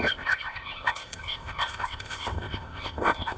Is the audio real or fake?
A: fake